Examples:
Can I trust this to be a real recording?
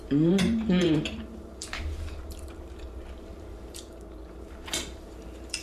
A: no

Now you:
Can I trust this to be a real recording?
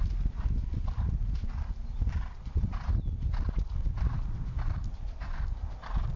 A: yes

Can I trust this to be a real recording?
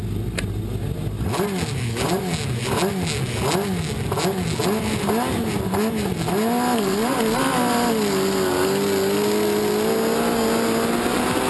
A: yes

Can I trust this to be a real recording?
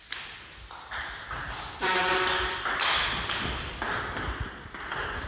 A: no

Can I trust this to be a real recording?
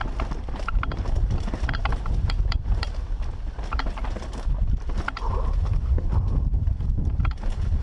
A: no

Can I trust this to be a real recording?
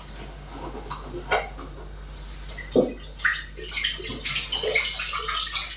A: yes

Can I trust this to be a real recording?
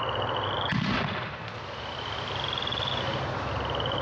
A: yes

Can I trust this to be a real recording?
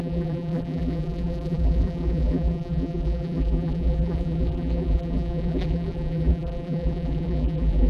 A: no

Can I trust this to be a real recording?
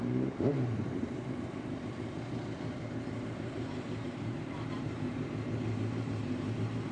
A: no